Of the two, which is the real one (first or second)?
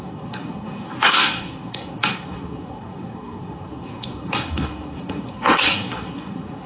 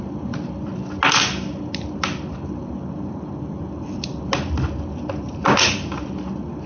second